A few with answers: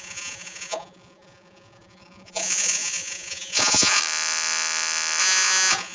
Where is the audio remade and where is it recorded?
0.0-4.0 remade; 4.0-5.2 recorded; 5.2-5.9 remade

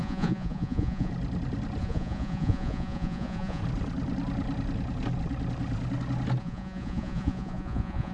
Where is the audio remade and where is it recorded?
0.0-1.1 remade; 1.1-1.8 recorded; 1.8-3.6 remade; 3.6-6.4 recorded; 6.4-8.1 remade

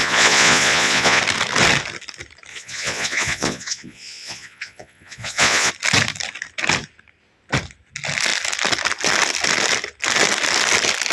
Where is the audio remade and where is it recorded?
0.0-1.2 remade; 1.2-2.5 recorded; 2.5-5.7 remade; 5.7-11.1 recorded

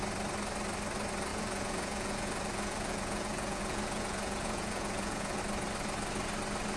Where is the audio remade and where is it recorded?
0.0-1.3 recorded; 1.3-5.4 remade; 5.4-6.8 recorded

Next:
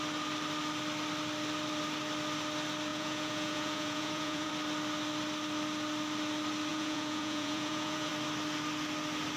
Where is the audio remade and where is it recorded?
0.0-2.9 recorded; 2.9-4.5 remade; 4.5-6.7 recorded; 6.7-8.1 remade; 8.1-9.4 recorded